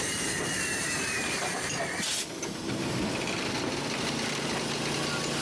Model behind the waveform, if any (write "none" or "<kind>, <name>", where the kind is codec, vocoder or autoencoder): none